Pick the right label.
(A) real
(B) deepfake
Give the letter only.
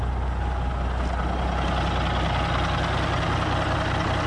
A